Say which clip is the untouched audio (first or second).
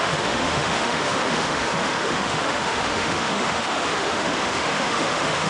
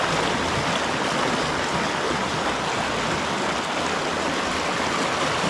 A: second